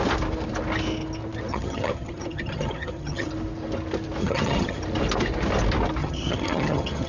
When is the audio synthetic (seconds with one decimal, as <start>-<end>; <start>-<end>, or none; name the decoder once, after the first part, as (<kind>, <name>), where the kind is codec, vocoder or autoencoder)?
1.5-3.3 (vocoder, HiFi-GAN); 4.2-4.8; 6.0-7.1